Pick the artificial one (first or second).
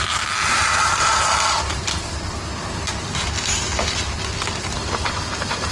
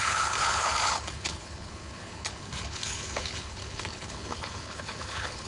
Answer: second